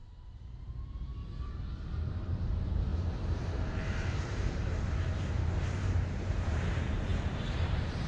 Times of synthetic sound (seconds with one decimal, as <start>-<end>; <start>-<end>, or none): 0.0-8.1